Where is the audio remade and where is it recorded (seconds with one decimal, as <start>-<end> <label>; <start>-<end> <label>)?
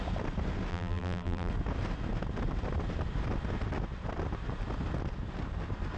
0.0-0.7 recorded; 0.7-1.5 remade; 1.5-6.0 recorded